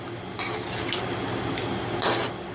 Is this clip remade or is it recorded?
recorded